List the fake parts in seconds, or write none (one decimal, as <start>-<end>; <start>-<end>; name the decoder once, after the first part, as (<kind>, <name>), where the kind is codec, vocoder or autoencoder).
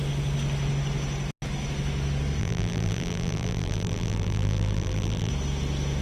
2.4-5.3 (vocoder, BigVGAN v2)